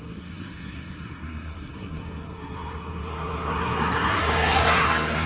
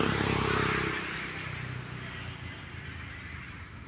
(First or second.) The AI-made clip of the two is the first